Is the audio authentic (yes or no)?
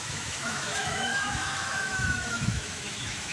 no